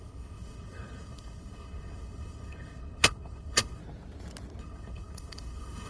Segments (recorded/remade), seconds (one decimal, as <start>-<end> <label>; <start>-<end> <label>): 0.0-3.8 remade; 3.8-4.6 recorded; 4.6-5.9 remade